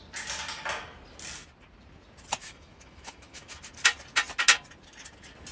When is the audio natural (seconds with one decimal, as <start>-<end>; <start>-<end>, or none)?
0.0-2.4; 3.6-5.5